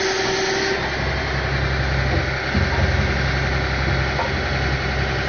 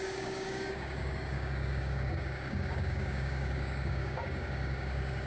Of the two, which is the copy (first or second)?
second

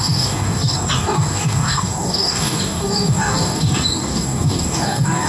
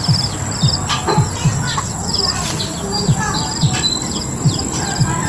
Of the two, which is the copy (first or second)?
first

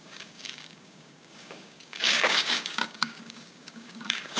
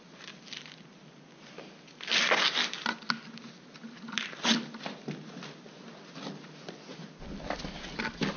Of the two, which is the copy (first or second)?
first